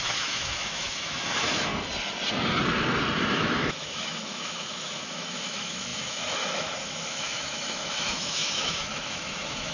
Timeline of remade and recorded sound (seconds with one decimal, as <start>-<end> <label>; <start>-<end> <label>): 0.0-1.7 remade; 1.7-3.3 recorded; 3.3-9.7 remade